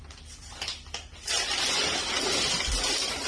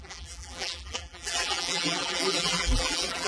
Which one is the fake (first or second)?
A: second